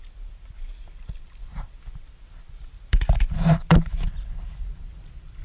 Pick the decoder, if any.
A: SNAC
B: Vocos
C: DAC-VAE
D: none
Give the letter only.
D